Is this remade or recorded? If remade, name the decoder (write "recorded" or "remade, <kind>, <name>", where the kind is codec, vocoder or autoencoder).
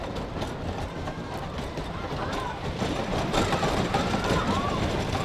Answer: recorded